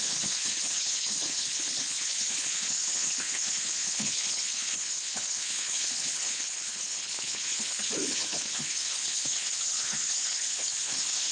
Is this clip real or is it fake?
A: fake